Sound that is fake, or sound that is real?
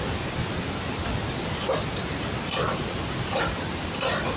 real